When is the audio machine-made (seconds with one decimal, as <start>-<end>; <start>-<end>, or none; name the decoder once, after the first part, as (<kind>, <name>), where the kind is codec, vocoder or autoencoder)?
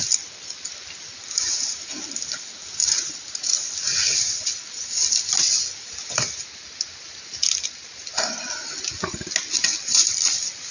none